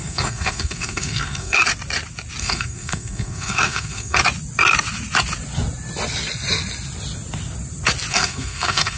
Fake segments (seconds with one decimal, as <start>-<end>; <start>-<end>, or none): 0.0-1.6; 2.4-4.2; 8.1-9.0